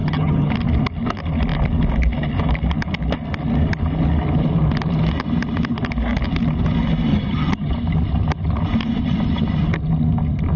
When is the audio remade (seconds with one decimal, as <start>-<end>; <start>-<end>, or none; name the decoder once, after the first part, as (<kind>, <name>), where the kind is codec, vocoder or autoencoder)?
0.0-0.5 (vocoder, HiFi-GAN); 7.1-7.7